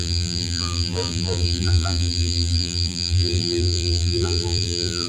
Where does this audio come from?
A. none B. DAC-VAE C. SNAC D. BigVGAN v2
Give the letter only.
D